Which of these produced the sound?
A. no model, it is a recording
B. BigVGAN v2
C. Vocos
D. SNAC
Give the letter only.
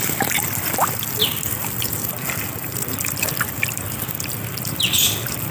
B